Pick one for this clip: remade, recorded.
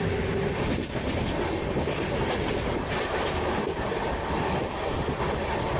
recorded